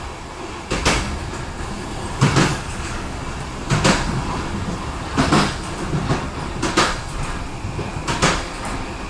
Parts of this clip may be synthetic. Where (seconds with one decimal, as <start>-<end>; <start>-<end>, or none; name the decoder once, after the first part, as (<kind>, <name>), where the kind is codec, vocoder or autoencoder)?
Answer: 2.5-3.2 (codec, DAC)